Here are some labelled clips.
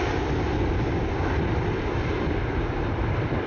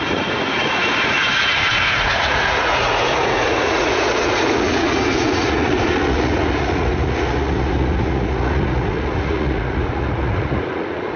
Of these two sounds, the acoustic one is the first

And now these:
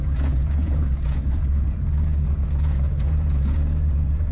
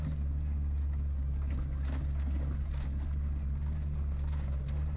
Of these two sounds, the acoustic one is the second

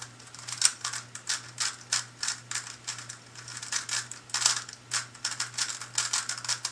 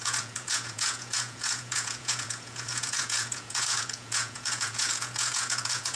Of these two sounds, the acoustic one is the first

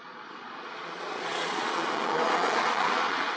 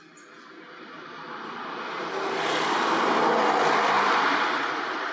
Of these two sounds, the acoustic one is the second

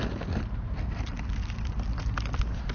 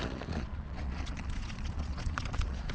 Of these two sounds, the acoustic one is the first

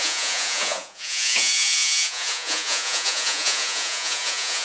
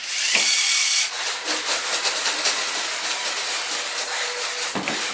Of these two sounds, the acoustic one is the second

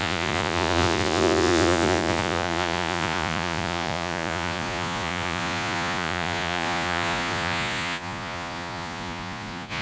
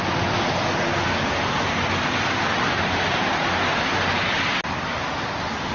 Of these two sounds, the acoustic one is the second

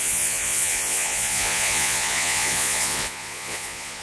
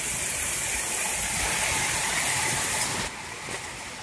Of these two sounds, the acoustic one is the second